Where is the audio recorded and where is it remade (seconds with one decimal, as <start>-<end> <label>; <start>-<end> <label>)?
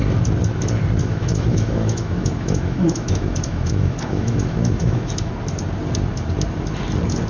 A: 0.0-1.0 recorded; 1.0-5.3 remade; 5.3-7.3 recorded